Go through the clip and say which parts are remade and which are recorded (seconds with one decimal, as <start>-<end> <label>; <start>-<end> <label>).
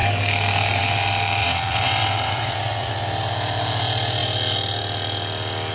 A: 0.0-1.4 recorded; 1.4-2.9 remade; 2.9-5.7 recorded